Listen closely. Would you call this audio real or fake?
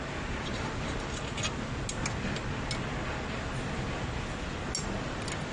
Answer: real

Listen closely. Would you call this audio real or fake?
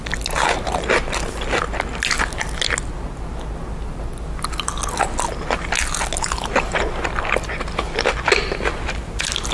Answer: real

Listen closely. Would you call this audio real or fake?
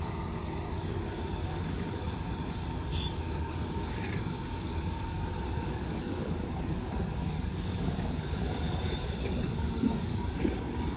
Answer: fake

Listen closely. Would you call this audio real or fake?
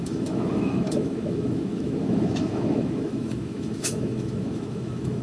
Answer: fake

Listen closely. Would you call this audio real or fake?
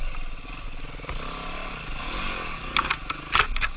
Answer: real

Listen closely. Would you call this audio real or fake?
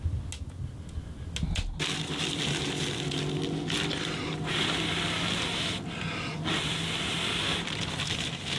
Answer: real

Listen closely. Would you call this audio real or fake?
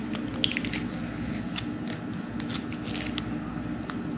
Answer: real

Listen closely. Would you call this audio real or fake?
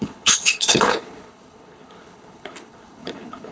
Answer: fake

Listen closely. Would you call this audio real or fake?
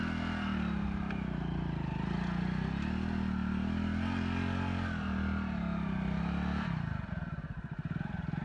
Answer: real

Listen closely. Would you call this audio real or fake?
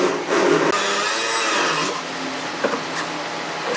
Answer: real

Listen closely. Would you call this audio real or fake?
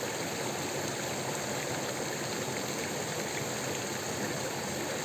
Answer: real